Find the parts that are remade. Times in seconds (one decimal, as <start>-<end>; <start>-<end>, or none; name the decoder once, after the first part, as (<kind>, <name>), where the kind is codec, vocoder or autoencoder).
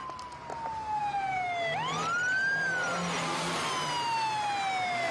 none